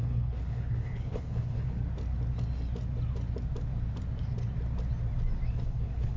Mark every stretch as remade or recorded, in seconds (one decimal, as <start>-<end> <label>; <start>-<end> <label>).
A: 0.0-1.8 remade; 1.8-5.5 recorded; 5.5-6.2 remade